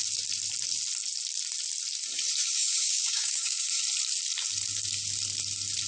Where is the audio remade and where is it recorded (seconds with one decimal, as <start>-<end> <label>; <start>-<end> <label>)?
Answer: 0.0-2.4 recorded; 2.4-3.8 remade; 3.8-5.9 recorded